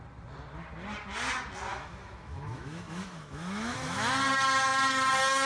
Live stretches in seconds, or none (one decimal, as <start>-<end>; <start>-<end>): 0.0-1.7; 4.1-5.5